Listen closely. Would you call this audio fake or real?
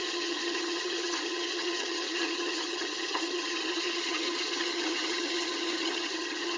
fake